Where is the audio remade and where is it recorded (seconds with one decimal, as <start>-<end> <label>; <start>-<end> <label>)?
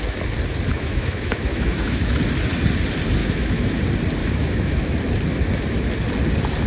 0.0-0.7 recorded; 0.7-2.2 remade; 2.2-3.2 recorded; 3.2-3.8 remade; 3.8-4.2 recorded; 4.2-4.8 remade; 4.8-6.7 recorded